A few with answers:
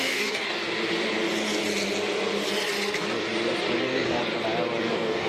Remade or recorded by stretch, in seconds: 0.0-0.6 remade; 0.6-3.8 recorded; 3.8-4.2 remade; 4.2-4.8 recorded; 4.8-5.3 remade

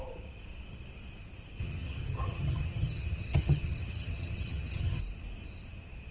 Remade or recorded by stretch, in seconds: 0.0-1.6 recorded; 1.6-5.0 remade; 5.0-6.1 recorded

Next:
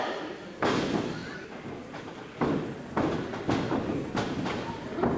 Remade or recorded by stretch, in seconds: 0.0-5.2 recorded

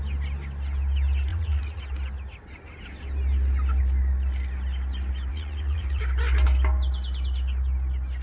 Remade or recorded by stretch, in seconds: 0.0-1.3 recorded; 1.3-1.8 remade; 1.8-5.3 recorded; 5.3-6.0 remade; 6.0-8.2 recorded